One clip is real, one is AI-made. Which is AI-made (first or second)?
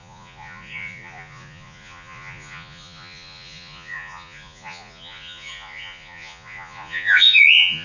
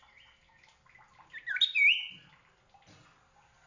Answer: first